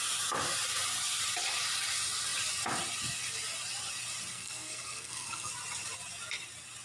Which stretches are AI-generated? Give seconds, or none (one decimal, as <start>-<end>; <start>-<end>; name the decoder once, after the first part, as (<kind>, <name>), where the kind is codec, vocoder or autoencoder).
4.3-5.5 (codec, SNAC)